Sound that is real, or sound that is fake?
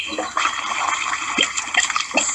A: fake